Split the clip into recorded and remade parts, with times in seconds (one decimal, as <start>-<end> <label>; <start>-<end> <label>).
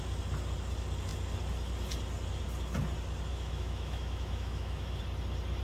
0.0-3.3 recorded; 3.3-5.0 remade; 5.0-5.6 recorded